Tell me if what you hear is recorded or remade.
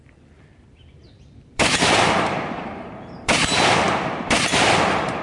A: remade